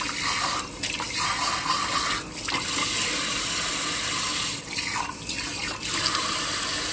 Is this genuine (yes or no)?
yes